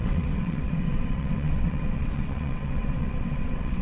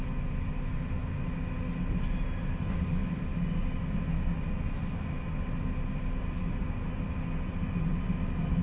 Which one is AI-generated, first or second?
first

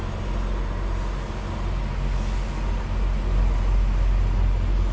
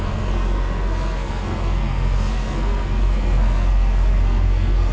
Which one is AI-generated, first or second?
second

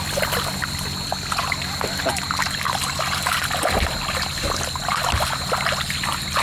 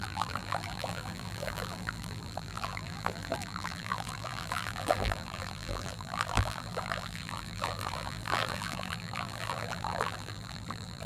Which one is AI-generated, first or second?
second